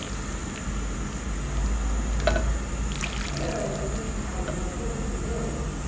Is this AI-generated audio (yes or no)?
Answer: no